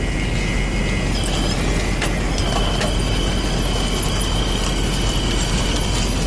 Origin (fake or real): real